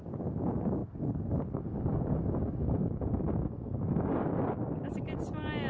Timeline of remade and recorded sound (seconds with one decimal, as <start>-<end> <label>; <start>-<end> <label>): 0.0-0.8 recorded; 0.8-4.2 remade; 4.2-5.7 recorded